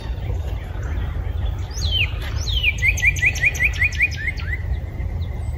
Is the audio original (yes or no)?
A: yes